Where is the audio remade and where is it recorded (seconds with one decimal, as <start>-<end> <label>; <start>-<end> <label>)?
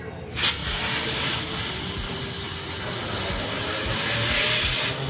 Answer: 0.0-5.1 recorded